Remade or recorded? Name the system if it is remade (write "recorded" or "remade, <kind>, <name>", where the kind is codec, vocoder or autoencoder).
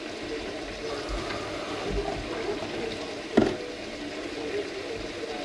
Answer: recorded